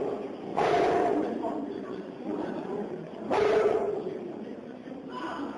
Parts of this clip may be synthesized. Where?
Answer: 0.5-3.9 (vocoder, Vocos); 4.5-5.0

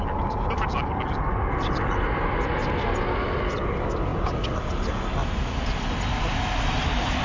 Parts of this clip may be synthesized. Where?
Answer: none

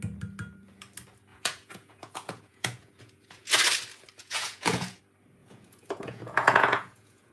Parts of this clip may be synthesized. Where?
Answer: 1.3-3.6 (vocoder, Vocos); 4.2-5.0; 5.4-7.3

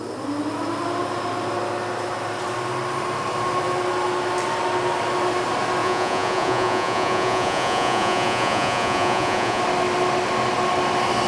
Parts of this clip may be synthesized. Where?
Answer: 5.8-9.6 (vocoder, Vocos)

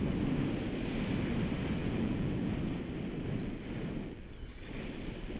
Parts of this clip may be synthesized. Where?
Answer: 1.8-2.5 (vocoder, Vocos)

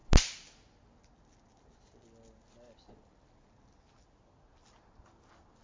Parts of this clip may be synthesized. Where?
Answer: none

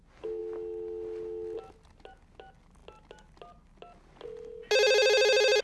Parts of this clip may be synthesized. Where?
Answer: none

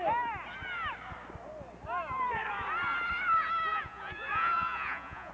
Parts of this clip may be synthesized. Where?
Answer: 3.7-5.3 (vocoder, Vocos)